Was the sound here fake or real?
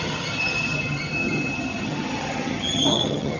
fake